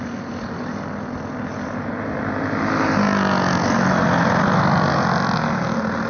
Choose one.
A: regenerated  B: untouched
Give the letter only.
B